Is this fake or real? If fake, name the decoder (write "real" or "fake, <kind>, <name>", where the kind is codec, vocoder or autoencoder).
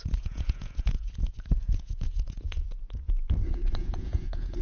fake, vocoder, Vocos